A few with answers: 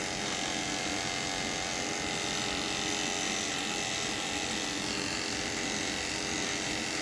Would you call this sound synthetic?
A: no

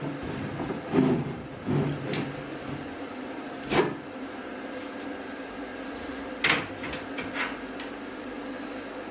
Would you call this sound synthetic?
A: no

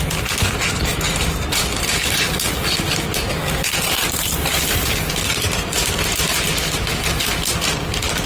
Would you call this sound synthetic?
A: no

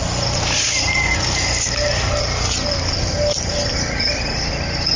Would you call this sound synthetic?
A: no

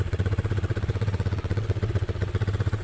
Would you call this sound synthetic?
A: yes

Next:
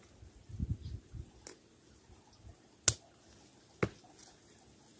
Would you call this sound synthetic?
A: no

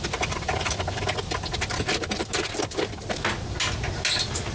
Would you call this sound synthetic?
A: no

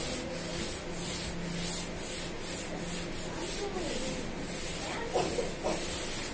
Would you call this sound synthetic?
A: no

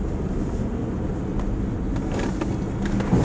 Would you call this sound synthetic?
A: no